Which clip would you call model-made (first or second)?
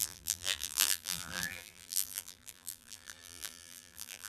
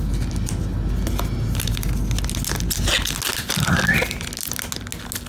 first